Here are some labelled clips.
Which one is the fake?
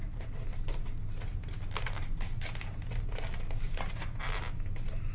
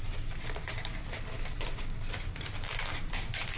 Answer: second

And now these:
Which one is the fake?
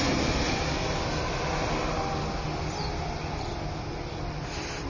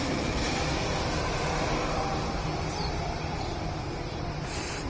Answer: second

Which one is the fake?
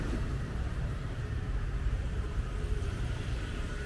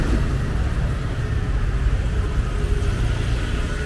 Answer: first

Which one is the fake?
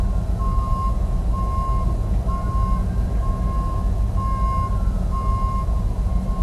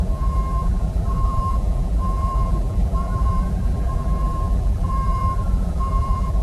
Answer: second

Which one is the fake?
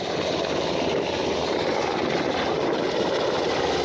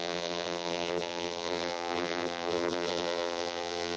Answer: second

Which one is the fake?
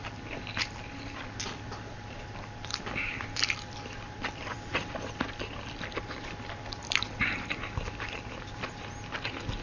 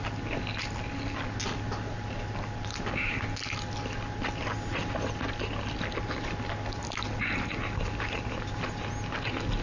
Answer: first